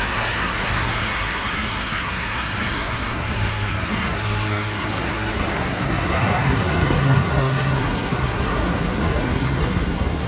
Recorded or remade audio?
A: remade